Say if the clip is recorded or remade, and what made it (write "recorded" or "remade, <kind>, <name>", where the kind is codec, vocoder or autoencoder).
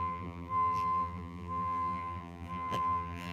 remade, vocoder, BigVGAN v2